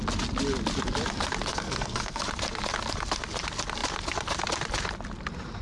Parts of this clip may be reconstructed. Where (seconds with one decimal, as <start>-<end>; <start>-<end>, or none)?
1.5-2.2